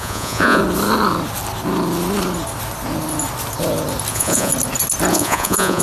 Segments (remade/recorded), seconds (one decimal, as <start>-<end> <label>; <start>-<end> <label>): 0.0-0.6 remade; 0.6-4.1 recorded; 4.1-4.5 remade; 4.5-5.1 recorded; 5.1-5.8 remade